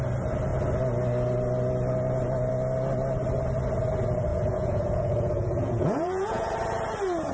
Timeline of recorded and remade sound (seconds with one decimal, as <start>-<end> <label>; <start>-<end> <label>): 0.0-4.3 recorded; 4.3-6.5 remade; 6.5-7.3 recorded